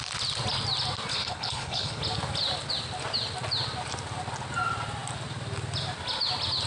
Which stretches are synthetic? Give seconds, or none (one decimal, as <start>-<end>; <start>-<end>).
1.1-2.0